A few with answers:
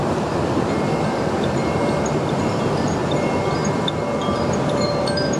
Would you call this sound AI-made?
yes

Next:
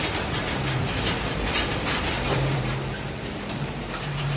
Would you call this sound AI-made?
yes